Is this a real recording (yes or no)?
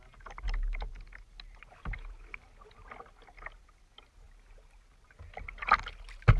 yes